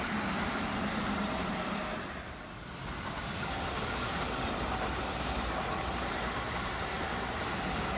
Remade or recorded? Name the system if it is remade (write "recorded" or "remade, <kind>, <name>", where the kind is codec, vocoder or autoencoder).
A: recorded